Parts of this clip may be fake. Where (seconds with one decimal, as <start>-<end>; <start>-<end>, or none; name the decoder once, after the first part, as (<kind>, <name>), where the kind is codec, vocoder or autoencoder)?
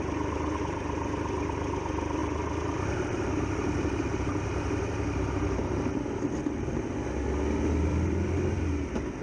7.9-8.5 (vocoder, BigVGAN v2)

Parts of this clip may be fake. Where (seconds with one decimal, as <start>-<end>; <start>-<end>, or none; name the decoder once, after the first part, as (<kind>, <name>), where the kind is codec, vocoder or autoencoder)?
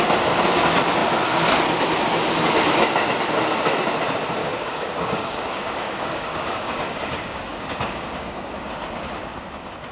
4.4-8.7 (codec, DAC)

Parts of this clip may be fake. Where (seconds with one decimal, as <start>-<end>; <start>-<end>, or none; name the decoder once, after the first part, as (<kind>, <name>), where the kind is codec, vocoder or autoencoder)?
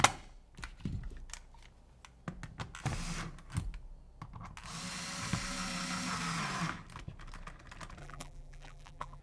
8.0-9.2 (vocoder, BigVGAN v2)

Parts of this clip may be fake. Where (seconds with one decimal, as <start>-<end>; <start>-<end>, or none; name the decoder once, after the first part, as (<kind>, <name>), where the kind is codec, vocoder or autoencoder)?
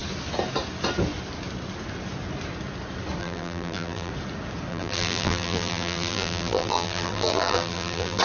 3.2-4.1 (vocoder, BigVGAN v2); 4.7-8.2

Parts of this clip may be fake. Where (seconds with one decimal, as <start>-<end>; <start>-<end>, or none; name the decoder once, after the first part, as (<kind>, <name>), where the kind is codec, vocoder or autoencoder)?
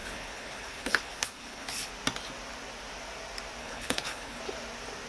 0.0-1.9 (codec, HILCodec); 3.6-4.4